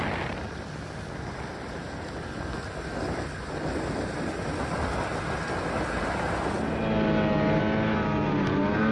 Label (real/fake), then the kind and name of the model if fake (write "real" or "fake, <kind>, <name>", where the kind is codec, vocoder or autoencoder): real